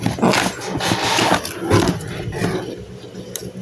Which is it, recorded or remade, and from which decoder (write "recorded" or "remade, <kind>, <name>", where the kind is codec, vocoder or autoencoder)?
recorded